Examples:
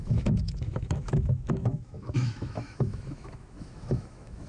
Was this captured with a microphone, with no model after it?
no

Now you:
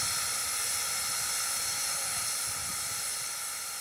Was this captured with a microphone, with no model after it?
yes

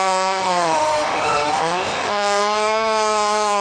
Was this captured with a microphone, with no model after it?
no